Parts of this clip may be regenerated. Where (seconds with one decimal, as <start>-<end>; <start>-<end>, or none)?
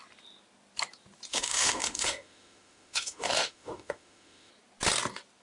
1.3-4.5